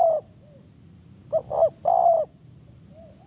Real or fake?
real